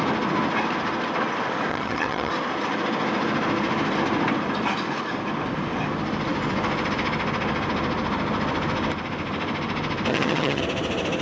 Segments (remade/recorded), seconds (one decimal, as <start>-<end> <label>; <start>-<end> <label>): 0.0-1.7 recorded; 1.7-2.3 remade; 2.3-10.1 recorded; 10.1-10.6 remade; 10.6-11.2 recorded